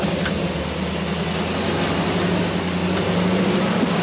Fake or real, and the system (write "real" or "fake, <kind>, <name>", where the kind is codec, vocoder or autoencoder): real